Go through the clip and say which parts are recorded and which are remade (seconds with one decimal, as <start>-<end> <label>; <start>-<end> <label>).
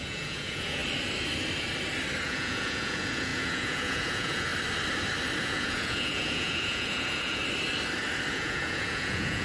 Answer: 0.0-0.8 remade; 0.8-2.2 recorded; 2.2-4.5 remade; 4.5-5.4 recorded; 5.4-7.4 remade; 7.4-8.3 recorded; 8.3-9.4 remade